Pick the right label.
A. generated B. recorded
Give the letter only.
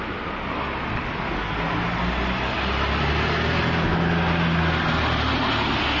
B